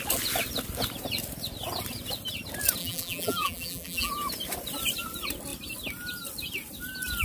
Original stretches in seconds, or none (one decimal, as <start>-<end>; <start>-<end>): 0.0-2.8; 4.1-7.2